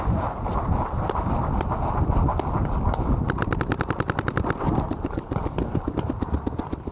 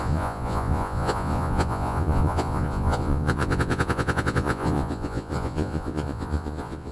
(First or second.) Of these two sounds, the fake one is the second